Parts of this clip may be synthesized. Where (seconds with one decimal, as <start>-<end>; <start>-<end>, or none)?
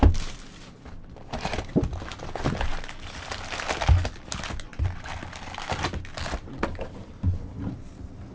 none